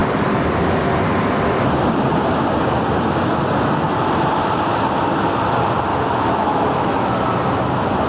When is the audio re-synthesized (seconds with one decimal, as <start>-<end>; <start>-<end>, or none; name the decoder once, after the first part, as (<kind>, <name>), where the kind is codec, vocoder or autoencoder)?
5.9-7.1 (autoencoder, DAC-VAE)